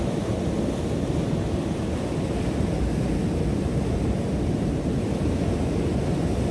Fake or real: real